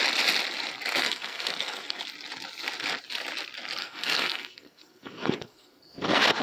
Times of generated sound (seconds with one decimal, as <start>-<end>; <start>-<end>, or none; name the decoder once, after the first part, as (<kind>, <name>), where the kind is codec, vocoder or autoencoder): 1.0-2.0 (codec, SNAC); 3.8-6.4